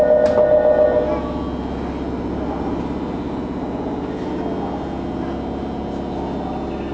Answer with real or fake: real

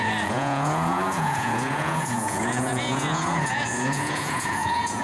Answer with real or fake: fake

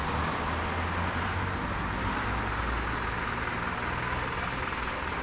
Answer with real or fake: real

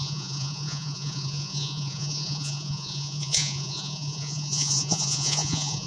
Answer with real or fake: fake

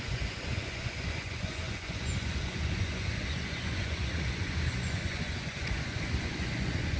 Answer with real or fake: fake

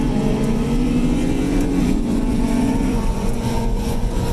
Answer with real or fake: fake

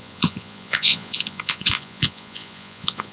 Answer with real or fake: fake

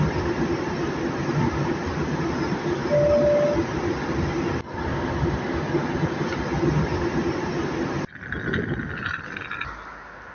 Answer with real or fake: real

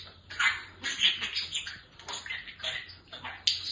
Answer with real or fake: real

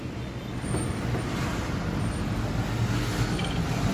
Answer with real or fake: real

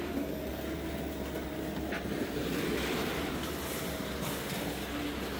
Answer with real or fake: real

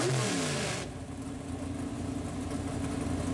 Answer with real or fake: real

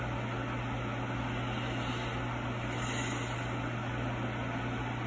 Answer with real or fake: real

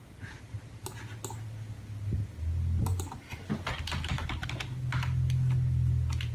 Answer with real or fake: real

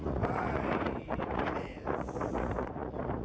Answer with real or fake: fake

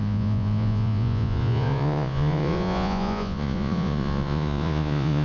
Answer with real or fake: fake